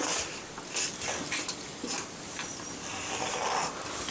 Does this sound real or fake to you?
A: fake